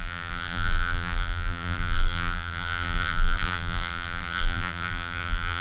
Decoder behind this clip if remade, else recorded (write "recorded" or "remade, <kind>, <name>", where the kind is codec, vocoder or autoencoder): remade, vocoder, BigVGAN v2